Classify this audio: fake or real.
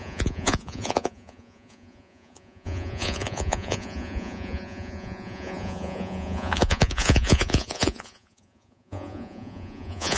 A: fake